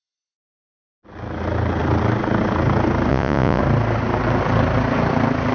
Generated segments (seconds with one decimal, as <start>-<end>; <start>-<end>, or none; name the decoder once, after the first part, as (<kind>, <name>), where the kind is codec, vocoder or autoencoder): 3.1-3.6 (vocoder, Vocos)